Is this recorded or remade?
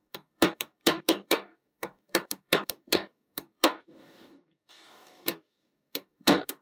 remade